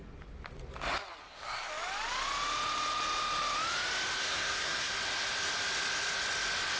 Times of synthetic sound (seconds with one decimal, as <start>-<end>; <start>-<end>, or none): 1.2-1.7; 4.2-4.9